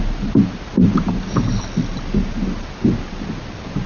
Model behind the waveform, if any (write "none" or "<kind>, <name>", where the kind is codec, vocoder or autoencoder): none